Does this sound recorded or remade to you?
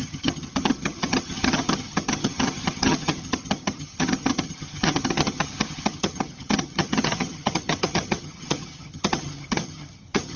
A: remade